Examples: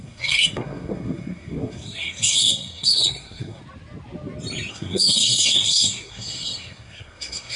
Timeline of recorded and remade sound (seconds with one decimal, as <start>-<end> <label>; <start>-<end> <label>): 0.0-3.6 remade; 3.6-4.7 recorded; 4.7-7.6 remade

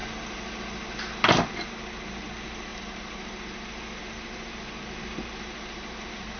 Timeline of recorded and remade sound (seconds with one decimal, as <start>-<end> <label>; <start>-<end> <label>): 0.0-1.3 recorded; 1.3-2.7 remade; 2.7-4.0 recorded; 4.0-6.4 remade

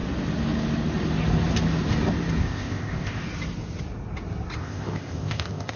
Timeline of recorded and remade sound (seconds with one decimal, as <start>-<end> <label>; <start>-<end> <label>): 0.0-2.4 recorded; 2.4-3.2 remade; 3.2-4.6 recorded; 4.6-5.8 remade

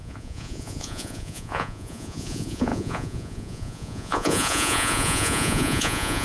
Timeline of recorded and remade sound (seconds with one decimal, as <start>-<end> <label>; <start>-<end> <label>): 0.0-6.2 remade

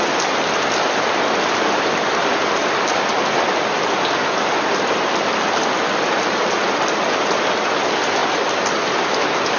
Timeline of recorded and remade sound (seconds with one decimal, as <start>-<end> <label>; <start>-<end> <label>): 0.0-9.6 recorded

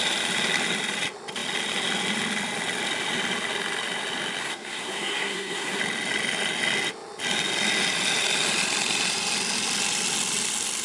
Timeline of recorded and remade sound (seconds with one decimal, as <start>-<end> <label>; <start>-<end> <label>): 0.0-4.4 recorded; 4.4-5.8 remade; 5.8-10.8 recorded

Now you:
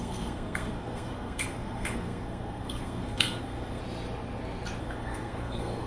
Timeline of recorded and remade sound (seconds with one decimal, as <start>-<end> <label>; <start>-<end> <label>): 0.0-3.8 remade; 3.8-4.8 recorded; 4.8-5.9 remade